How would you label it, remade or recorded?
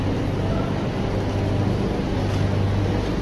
recorded